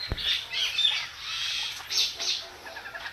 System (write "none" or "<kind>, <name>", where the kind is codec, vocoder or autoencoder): none